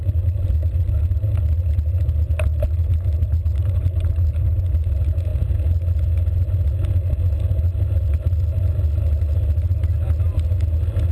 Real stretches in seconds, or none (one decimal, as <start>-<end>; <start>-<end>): 0.0-11.1